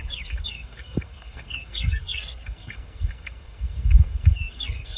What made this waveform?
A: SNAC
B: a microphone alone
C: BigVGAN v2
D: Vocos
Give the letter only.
A